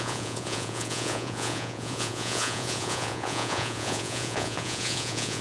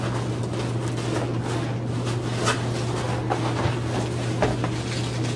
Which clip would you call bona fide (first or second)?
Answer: second